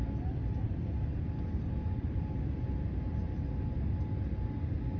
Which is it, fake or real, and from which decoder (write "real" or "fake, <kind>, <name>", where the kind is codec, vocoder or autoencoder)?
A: real